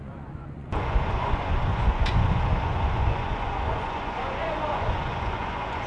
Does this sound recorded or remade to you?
remade